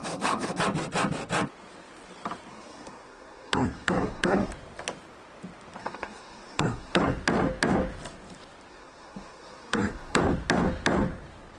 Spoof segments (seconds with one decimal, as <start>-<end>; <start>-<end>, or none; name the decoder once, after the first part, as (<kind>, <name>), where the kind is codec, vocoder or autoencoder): 0.0-0.6 (codec, SNAC); 2.5-4.5; 5.8-7.0; 8.7-10.2